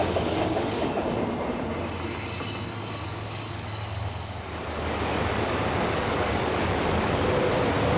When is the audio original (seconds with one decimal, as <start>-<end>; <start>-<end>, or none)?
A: 1.0-2.7; 7.5-8.0